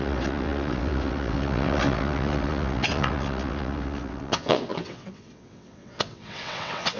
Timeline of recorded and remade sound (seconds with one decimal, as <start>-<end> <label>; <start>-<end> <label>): 0.0-7.0 remade